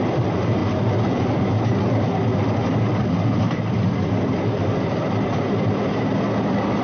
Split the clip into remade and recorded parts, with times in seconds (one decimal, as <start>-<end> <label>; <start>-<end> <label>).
0.0-6.8 recorded